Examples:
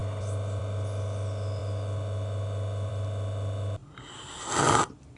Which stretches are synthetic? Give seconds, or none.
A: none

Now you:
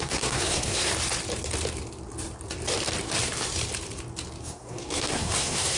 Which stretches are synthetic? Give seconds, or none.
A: 0.0-0.9 (codec, SNAC); 4.4-5.8

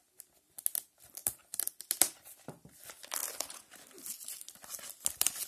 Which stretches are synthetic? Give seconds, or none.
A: 1.2-1.8 (vocoder, BigVGAN v2)

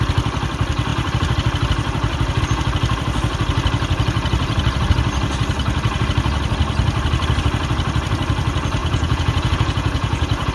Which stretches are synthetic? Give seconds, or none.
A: 8.8-10.5 (vocoder, Vocos)

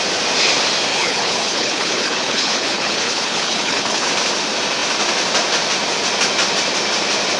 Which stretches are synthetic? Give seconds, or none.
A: 0.9-4.1 (codec, HILCodec)